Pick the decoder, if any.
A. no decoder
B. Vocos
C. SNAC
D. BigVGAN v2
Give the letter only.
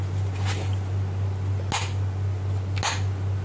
A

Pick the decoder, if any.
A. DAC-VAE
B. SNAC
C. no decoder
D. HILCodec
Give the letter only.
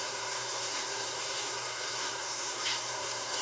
B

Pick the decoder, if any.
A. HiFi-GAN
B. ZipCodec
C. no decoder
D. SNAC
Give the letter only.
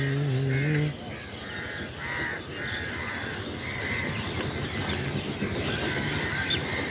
C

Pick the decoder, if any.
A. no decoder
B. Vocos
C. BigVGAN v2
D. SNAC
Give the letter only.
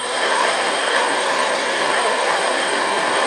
D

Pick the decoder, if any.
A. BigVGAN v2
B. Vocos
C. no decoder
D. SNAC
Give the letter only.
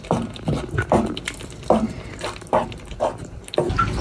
C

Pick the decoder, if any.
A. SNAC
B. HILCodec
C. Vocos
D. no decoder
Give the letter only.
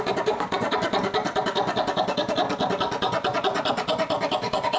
D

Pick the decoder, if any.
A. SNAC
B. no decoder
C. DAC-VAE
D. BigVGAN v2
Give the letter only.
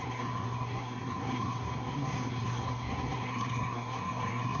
A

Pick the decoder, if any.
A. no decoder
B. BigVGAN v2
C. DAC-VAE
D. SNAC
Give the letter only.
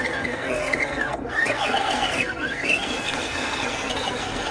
D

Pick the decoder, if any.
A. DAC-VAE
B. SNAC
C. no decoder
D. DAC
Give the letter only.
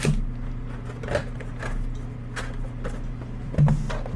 C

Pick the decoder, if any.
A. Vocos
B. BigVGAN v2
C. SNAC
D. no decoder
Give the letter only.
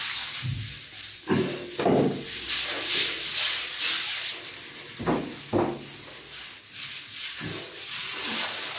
D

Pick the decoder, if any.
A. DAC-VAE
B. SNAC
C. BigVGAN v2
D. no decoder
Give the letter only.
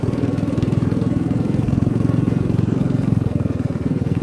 B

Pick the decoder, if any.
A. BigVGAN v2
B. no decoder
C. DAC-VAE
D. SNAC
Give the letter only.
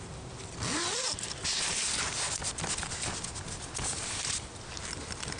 B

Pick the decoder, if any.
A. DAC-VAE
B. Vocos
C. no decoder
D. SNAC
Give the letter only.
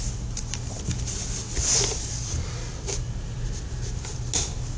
C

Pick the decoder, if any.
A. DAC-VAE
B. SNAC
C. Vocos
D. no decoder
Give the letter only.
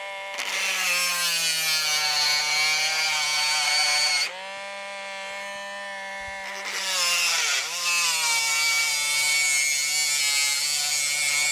D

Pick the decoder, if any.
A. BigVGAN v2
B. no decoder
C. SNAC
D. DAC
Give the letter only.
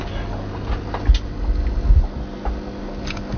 B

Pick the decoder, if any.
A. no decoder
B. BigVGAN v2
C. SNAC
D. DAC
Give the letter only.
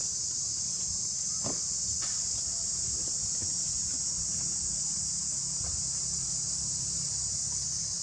A